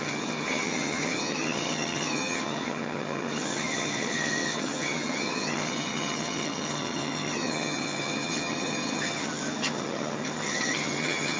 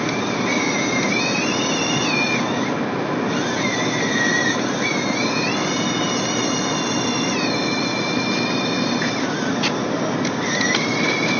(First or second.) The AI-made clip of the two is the first